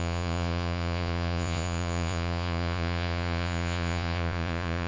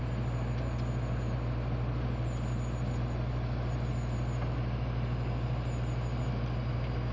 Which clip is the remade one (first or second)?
first